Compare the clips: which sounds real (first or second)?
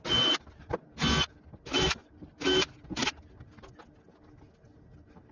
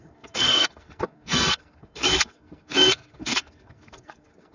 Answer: first